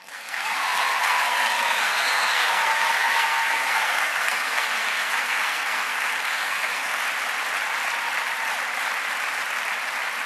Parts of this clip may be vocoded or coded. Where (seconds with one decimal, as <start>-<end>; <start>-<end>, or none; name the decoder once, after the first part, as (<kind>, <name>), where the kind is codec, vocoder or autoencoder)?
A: 0.0-7.0 (codec, SNAC)